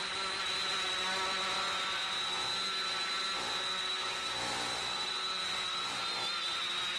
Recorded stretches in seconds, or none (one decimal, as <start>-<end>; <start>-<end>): 0.0-7.0